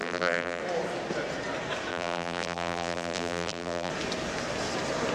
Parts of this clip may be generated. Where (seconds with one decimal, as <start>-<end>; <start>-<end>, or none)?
0.0-0.6; 1.9-3.9